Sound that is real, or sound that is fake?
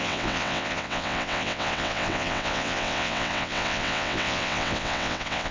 fake